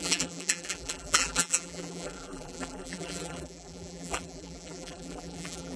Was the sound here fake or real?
fake